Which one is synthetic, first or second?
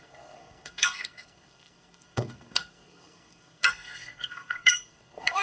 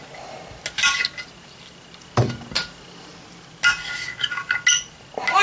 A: first